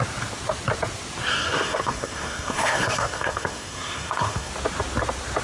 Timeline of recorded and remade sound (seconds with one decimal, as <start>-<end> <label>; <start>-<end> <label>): 0.0-1.3 recorded; 1.3-4.5 remade; 4.5-5.4 recorded